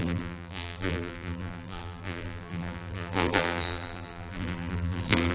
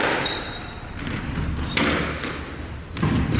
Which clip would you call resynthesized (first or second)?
first